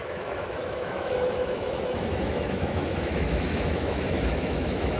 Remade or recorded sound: remade